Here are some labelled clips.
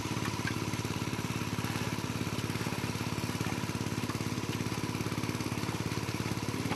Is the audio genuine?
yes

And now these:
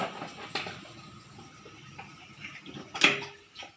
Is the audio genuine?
yes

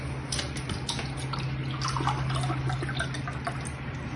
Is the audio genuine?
yes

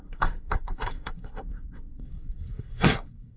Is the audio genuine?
no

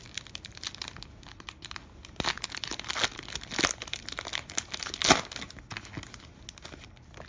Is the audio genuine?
yes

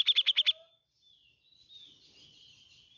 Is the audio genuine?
yes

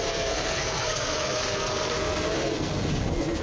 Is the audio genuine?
no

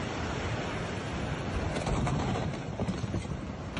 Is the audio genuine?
yes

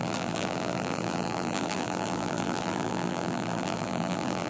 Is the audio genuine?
no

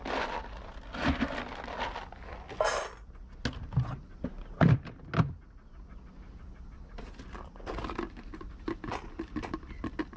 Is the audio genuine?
yes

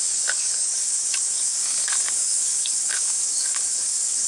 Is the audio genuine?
no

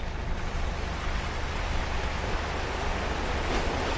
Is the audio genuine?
yes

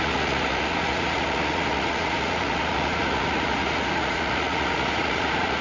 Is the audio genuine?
no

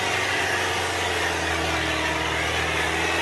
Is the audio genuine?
yes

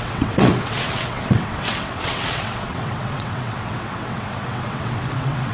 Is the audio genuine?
no